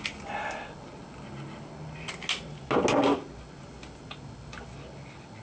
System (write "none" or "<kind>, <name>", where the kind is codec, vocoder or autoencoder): none